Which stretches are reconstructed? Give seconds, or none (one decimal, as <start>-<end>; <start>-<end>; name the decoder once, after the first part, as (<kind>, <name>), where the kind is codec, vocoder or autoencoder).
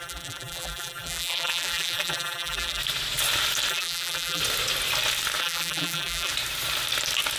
0.0-2.8 (vocoder, BigVGAN v2); 3.7-4.4; 5.4-6.3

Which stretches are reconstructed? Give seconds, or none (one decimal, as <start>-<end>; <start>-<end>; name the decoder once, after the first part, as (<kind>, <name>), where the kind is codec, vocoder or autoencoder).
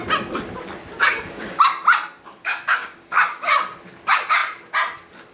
1.0-1.6 (codec, DAC); 2.4-3.5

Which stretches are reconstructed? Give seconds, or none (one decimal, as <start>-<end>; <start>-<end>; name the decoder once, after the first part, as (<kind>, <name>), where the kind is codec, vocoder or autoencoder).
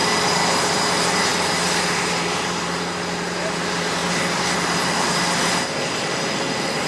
0.5-4.0 (vocoder, BigVGAN v2)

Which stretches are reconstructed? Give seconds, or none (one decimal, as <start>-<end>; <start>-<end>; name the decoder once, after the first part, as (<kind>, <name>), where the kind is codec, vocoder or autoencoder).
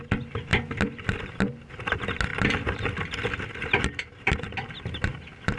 none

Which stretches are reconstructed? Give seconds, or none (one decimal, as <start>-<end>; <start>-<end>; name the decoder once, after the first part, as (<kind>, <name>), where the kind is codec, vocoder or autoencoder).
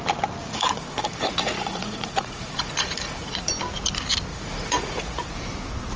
0.4-3.5 (vocoder, Vocos); 4.3-5.3